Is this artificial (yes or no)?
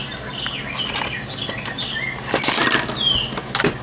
no